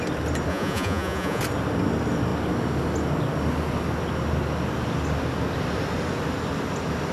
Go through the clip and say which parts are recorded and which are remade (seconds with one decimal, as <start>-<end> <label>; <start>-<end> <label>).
0.0-0.5 recorded; 0.5-1.4 remade; 1.4-7.1 recorded